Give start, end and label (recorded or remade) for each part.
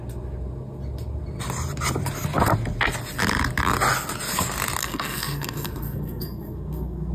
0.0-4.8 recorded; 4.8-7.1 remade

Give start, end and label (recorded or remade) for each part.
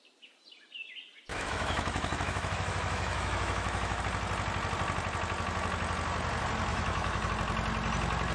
0.0-1.3 recorded; 1.3-4.0 remade; 4.0-6.7 recorded; 6.7-7.3 remade; 7.3-8.3 recorded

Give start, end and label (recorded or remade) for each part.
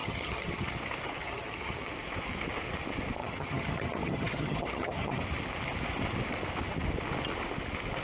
0.0-0.7 remade; 0.7-1.2 recorded; 1.2-1.9 remade; 1.9-3.2 recorded; 3.2-5.2 remade; 5.2-8.0 recorded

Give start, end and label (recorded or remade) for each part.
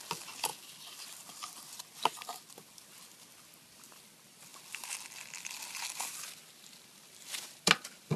0.0-8.2 recorded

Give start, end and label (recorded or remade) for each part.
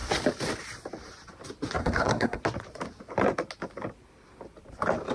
0.0-1.8 recorded; 1.8-2.4 remade; 2.4-5.1 recorded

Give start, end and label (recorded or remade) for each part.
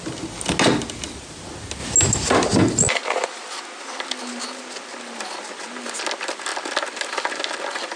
0.0-8.0 recorded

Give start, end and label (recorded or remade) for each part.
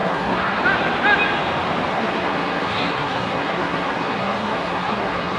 0.0-0.6 remade; 0.6-1.9 recorded; 1.9-5.4 remade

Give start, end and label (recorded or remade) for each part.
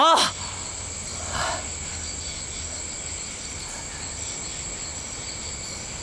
0.0-4.9 recorded; 4.9-5.5 remade; 5.5-6.0 recorded